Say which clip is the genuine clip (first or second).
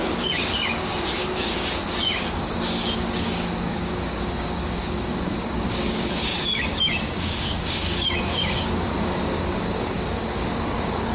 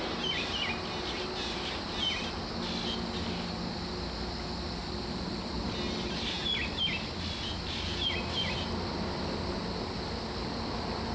second